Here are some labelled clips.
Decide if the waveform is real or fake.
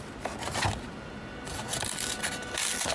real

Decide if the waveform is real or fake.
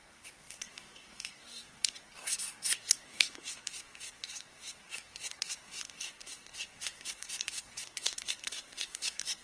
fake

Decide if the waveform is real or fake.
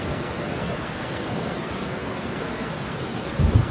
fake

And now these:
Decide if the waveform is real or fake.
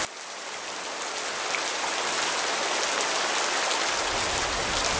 real